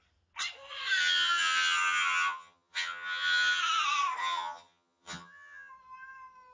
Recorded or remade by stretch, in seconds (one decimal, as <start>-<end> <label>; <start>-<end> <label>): 0.0-1.0 recorded; 1.0-3.6 remade; 3.6-4.2 recorded; 4.2-5.7 remade; 5.7-6.5 recorded